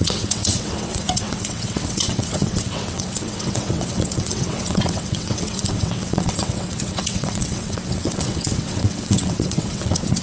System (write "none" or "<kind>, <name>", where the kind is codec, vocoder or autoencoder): vocoder, WaveNeXt